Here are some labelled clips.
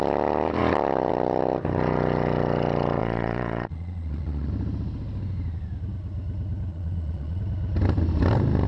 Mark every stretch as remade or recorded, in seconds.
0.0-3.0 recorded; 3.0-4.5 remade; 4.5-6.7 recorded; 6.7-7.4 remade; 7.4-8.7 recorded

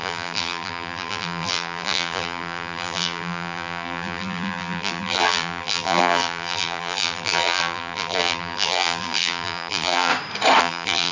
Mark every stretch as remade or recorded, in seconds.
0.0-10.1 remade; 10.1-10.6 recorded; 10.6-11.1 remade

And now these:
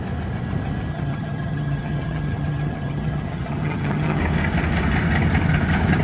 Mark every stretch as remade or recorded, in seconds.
0.0-0.9 recorded; 0.9-4.2 remade; 4.2-6.0 recorded

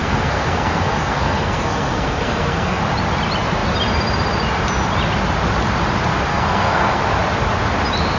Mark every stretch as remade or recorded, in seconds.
0.0-2.8 remade; 2.8-6.3 recorded; 6.3-7.0 remade; 7.0-8.2 recorded

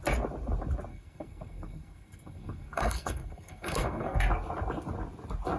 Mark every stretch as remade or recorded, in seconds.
0.0-0.9 recorded; 0.9-4.3 remade; 4.3-5.6 recorded

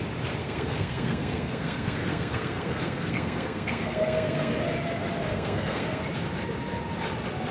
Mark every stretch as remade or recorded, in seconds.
0.0-0.4 recorded; 0.4-4.5 remade; 4.5-5.3 recorded; 5.3-6.0 remade; 6.0-7.5 recorded